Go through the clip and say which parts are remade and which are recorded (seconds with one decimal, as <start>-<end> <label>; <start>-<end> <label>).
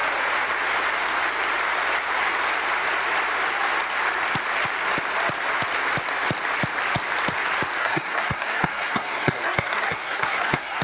0.0-7.8 recorded; 7.8-10.8 remade